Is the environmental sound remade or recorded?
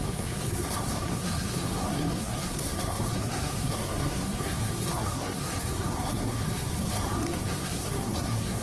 remade